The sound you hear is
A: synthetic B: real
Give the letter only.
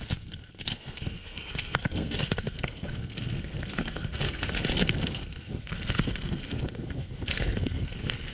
A